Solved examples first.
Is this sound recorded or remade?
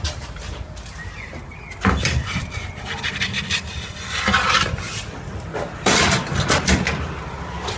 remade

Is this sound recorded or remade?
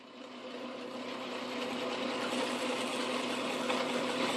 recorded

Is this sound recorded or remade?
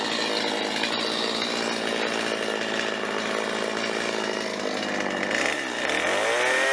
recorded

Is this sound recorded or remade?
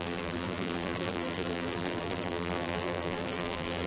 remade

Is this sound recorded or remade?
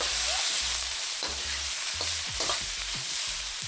remade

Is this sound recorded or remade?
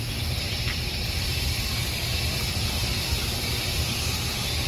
recorded